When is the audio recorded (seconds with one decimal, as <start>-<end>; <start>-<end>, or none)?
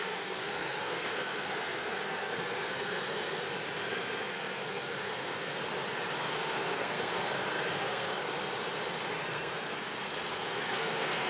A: 3.4-3.9; 5.6-6.2; 8.2-9.1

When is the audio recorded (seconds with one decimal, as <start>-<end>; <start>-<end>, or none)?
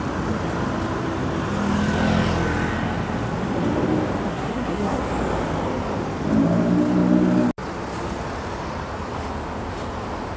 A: 0.0-4.3; 5.0-10.4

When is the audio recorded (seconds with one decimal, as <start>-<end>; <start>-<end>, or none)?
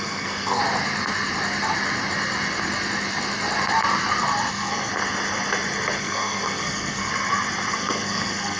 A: 0.6-4.5; 4.9-6.0; 7.1-7.7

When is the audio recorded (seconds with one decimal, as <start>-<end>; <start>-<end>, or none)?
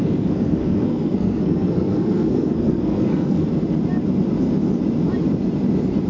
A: 3.5-6.1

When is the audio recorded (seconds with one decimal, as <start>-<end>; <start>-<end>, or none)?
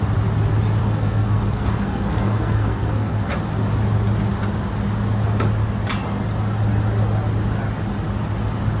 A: 0.0-0.8; 3.3-8.8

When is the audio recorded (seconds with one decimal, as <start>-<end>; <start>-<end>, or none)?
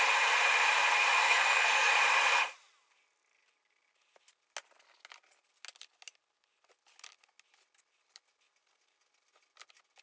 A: 0.0-1.2; 1.9-10.0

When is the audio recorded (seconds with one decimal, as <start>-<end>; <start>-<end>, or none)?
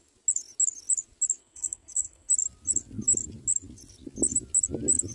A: 0.0-1.4; 2.3-5.1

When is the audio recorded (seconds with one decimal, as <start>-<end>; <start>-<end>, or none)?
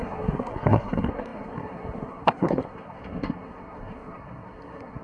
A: none